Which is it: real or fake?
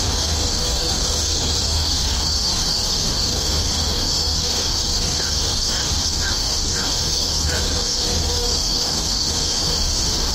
fake